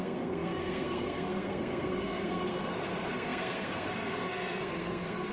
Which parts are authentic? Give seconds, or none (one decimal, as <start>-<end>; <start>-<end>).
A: none